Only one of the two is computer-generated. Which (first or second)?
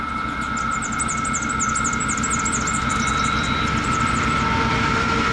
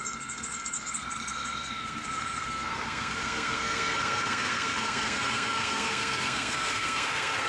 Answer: second